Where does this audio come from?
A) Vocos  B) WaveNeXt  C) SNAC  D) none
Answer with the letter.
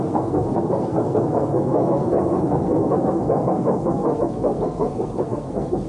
C